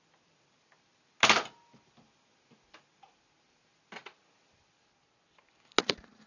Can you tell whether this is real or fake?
real